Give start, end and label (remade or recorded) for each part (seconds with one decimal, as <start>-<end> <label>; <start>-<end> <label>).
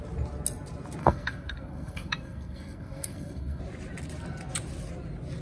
0.0-1.0 recorded; 1.0-3.6 remade; 3.6-5.4 recorded